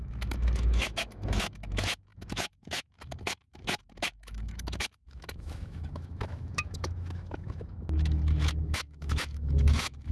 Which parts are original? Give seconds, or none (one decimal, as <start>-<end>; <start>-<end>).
none

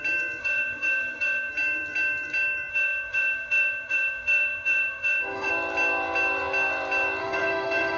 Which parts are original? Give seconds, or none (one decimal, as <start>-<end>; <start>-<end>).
0.0-0.4; 1.5-2.7; 5.5-7.2